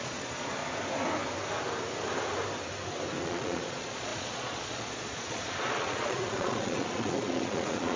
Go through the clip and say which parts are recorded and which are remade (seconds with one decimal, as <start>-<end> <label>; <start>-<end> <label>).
0.0-0.6 remade; 0.6-3.2 recorded; 3.2-8.0 remade